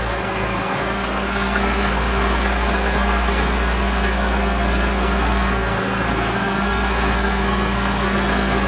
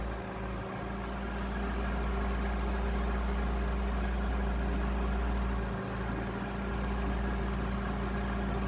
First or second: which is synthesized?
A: first